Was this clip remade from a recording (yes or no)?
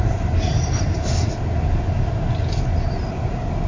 no